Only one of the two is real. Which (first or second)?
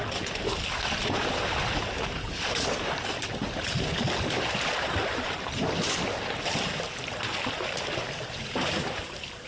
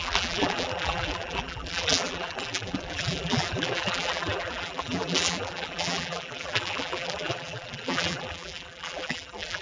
first